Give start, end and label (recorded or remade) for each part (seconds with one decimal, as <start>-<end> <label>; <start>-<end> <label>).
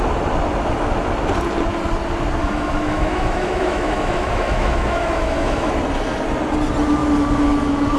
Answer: 0.0-2.4 recorded; 2.4-5.7 remade; 5.7-8.0 recorded